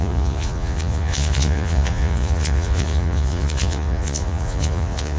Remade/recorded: remade